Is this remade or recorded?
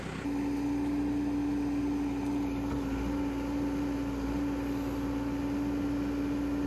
recorded